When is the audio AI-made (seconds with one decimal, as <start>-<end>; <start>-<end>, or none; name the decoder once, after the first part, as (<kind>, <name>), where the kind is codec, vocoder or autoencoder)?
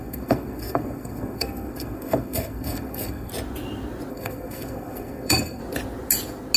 0.0-3.3 (codec, SNAC); 4.1-5.6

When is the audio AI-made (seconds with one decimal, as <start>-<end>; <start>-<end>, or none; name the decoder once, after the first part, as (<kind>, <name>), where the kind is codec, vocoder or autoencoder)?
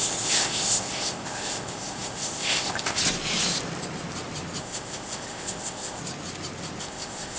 0.0-3.0 (codec, ZipCodec); 4.6-6.0; 6.8-7.4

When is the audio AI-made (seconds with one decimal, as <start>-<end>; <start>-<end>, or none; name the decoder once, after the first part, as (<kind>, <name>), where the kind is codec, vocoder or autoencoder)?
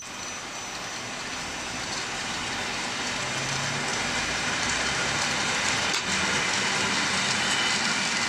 3.9-6.0 (vocoder, BigVGAN v2)